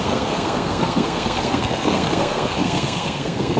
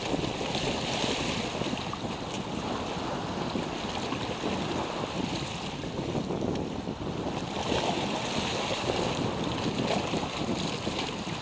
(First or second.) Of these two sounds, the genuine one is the second